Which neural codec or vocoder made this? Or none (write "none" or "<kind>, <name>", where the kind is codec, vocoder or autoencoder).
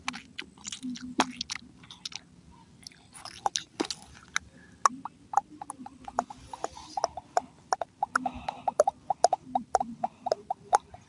none